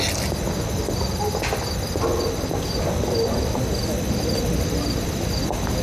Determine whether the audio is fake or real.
real